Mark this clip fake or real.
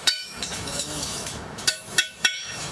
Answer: fake